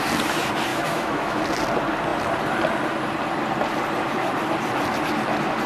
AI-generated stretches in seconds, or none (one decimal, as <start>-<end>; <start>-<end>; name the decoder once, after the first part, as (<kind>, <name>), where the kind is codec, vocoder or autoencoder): 0.7-1.4 (autoencoder, DAC-VAE)